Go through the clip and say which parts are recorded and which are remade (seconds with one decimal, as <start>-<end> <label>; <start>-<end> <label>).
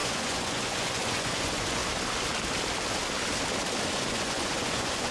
0.0-1.8 remade; 1.8-3.9 recorded; 3.9-5.1 remade